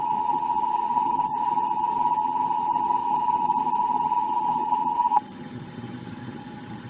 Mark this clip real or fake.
fake